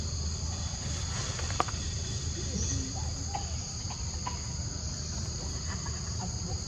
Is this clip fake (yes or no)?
yes